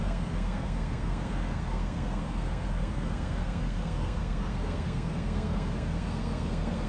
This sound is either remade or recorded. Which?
remade